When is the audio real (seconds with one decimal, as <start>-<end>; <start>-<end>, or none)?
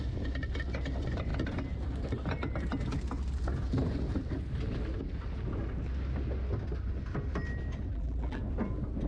0.0-7.9; 8.4-9.1